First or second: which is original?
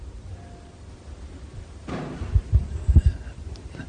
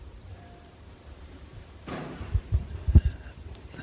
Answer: first